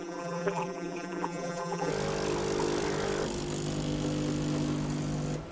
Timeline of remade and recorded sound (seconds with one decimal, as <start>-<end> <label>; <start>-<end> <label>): 0.0-1.9 remade; 1.9-5.5 recorded